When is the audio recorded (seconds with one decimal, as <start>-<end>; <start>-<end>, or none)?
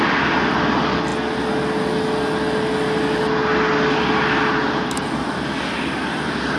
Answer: 0.0-6.6